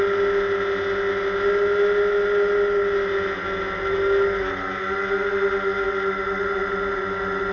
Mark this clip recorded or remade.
recorded